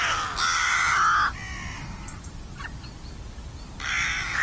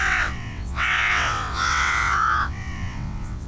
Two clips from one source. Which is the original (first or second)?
first